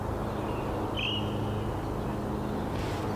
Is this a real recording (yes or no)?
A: yes